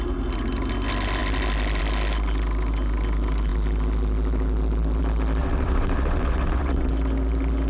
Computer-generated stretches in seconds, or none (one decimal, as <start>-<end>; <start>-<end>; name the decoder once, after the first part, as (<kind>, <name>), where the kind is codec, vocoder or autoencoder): 5.4-6.9 (vocoder, WaveNeXt)